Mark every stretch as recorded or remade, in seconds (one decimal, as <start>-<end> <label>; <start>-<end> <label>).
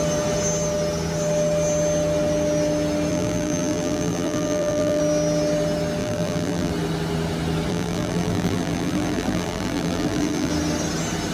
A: 0.0-3.1 recorded; 3.1-5.0 remade; 5.0-6.0 recorded; 6.0-6.7 remade; 6.7-7.7 recorded; 7.7-10.5 remade; 10.5-11.3 recorded